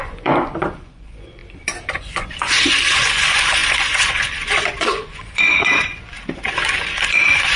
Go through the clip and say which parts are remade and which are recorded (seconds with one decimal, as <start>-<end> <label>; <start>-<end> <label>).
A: 0.0-1.4 remade; 1.4-1.9 recorded; 1.9-7.6 remade